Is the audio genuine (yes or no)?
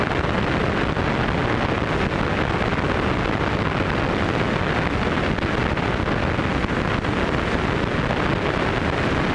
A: yes